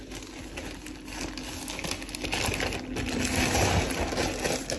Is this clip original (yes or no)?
yes